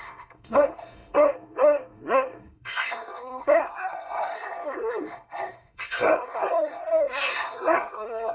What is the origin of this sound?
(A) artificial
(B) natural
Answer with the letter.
A